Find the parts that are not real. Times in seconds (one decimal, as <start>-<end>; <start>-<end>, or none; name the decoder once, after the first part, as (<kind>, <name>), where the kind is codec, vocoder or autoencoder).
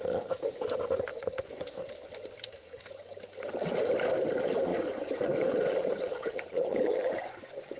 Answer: 1.1-1.8 (vocoder, Vocos); 4.7-7.8